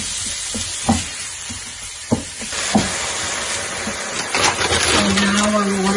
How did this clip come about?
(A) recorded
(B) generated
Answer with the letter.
A